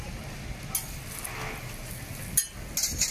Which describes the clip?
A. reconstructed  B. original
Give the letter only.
B